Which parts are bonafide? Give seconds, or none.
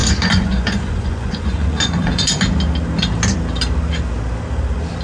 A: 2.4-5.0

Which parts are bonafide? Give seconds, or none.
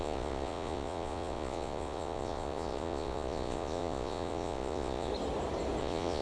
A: 5.1-5.8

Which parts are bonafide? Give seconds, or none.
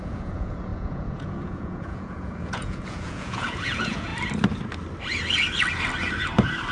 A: 4.1-6.7